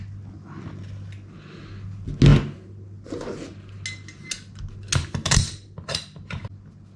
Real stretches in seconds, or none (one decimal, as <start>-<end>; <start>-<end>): 0.0-7.0